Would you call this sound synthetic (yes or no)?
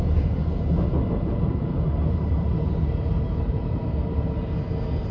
no